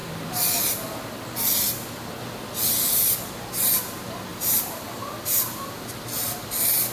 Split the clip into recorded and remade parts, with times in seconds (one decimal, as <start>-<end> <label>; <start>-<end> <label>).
0.0-4.3 recorded; 4.3-5.9 remade; 5.9-6.9 recorded